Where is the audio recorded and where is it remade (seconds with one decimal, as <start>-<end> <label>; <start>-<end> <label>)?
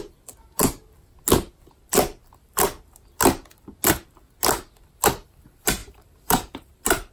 0.0-5.8 recorded; 5.8-7.1 remade